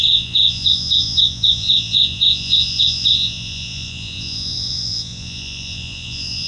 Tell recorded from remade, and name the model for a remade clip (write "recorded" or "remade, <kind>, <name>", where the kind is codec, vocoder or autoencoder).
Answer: remade, vocoder, Vocos